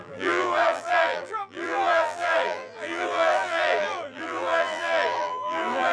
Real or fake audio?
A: fake